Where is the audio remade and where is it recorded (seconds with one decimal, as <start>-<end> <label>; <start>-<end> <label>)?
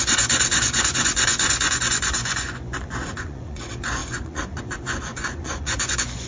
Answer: 0.0-6.3 remade